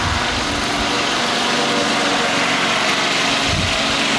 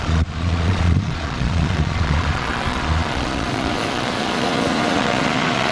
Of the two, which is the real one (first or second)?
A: first